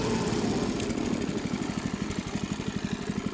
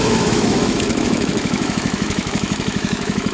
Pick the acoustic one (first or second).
first